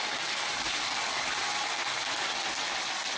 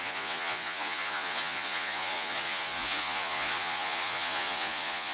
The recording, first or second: first